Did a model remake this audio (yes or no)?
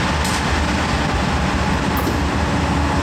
no